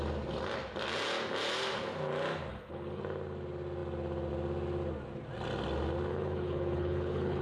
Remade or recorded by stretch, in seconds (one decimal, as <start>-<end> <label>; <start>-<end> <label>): 0.0-2.5 recorded; 2.5-3.0 remade; 3.0-6.1 recorded; 6.1-7.4 remade